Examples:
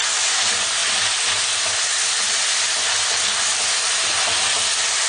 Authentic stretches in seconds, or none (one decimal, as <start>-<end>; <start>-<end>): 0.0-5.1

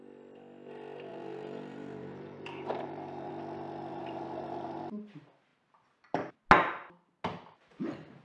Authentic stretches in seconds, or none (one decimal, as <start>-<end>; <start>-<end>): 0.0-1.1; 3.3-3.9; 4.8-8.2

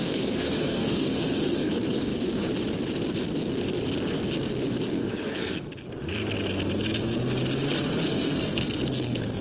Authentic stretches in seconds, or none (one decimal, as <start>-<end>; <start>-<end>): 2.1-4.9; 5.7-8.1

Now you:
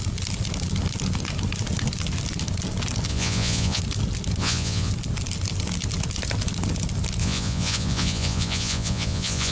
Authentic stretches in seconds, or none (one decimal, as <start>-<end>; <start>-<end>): 0.0-3.1; 3.8-4.4; 4.9-7.2

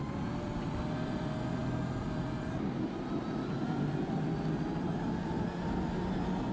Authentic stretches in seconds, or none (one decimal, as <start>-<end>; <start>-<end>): 0.0-6.5

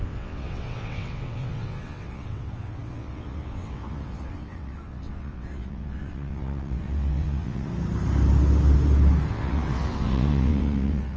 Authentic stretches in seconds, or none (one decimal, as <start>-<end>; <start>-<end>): 7.7-9.3

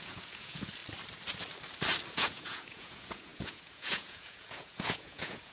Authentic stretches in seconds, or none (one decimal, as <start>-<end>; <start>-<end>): 0.8-2.1

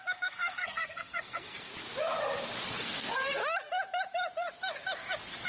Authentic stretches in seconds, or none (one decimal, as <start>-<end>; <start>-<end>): 1.7-2.7; 3.4-5.5